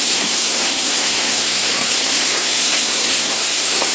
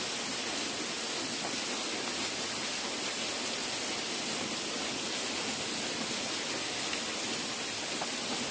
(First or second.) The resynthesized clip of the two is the first